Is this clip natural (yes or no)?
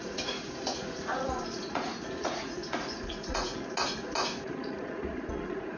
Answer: no